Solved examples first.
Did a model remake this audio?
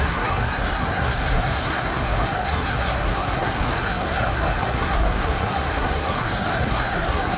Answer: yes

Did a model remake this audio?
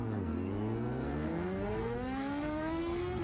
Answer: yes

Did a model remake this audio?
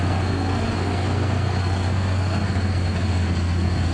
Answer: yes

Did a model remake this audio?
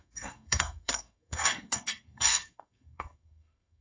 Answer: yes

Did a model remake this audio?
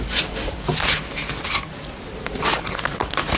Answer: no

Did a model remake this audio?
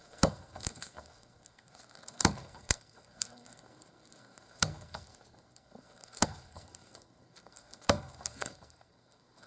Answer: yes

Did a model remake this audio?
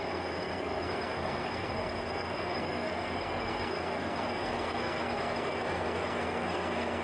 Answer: yes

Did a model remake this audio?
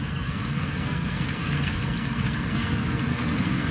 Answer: yes